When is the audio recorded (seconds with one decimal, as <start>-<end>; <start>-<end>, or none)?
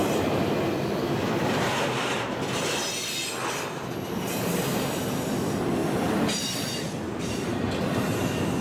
0.0-8.6